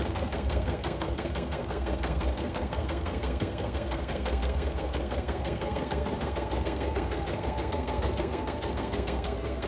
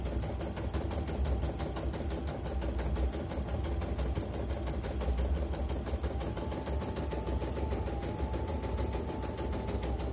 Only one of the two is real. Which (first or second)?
second